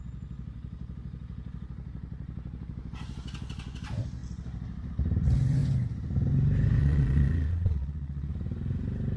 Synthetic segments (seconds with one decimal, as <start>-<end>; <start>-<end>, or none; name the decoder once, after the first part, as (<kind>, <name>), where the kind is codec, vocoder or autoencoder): 6.8-8.3 (vocoder, Vocos)